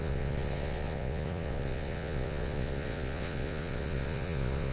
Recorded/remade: remade